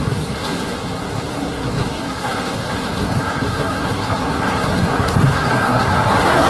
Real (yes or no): no